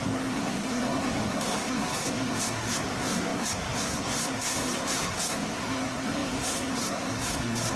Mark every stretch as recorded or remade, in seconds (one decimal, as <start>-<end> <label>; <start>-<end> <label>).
0.0-7.8 remade

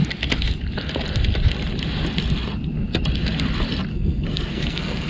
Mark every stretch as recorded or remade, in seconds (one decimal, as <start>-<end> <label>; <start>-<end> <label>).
0.0-3.9 recorded; 3.9-5.1 remade